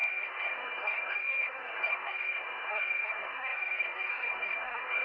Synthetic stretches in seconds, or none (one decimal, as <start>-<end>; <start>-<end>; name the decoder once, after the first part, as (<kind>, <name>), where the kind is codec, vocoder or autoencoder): 0.0-5.0 (codec, SNAC)